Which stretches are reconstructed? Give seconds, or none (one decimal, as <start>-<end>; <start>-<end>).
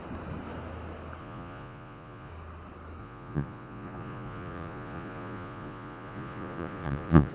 1.2-2.3; 3.0-7.3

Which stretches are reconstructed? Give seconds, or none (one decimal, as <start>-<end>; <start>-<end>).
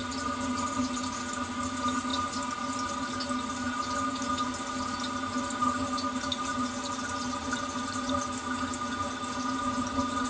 none